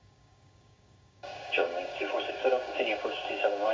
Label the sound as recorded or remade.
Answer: remade